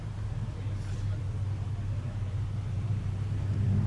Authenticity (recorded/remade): recorded